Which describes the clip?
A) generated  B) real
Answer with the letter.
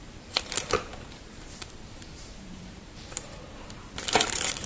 A